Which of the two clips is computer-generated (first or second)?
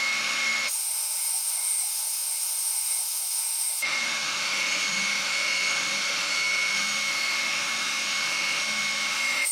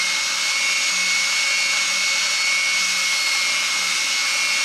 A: first